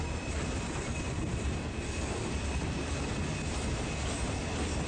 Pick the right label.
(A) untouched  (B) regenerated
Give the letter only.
A